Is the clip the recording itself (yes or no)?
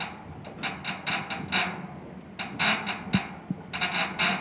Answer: yes